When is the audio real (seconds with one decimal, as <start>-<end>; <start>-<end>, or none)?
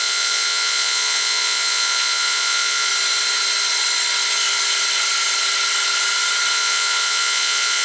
2.9-6.5